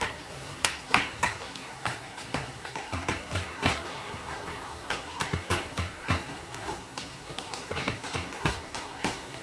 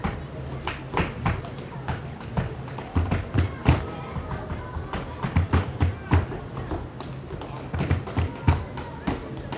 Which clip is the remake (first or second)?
first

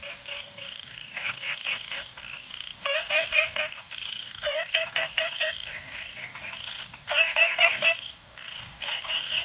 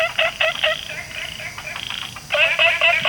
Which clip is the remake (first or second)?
first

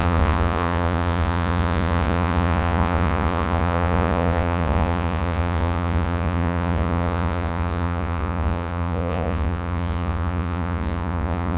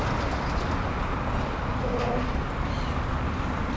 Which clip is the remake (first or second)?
first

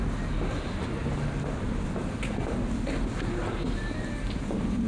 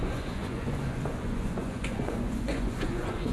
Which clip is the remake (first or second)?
second